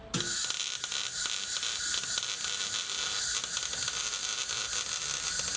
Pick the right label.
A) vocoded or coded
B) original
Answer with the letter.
B